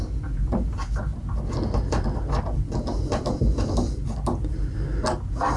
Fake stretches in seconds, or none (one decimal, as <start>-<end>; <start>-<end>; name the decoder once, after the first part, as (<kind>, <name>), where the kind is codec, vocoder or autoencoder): none